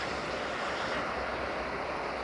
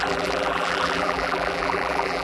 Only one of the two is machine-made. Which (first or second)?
second